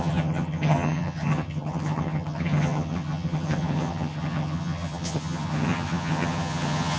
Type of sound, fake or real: fake